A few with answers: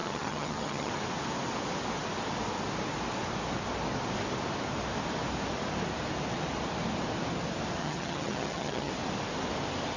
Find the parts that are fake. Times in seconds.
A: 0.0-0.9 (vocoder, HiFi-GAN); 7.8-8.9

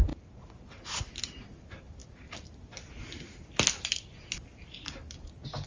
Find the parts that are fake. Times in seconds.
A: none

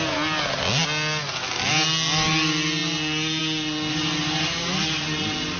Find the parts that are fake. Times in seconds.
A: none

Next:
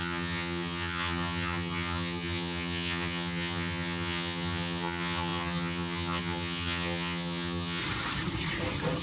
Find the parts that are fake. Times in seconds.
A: 0.0-7.8 (vocoder, HiFi-GAN)